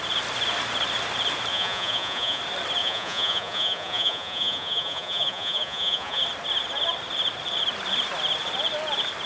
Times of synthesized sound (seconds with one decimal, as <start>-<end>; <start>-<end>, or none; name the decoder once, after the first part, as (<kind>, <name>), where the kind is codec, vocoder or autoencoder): 1.5-2.4 (vocoder, Vocos); 2.8-6.2